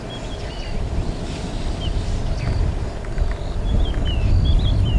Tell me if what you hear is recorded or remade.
recorded